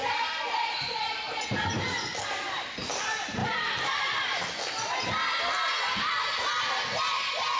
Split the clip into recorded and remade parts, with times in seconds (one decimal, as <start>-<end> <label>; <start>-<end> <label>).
0.0-1.4 remade; 1.4-3.4 recorded; 3.4-4.2 remade; 4.2-7.6 recorded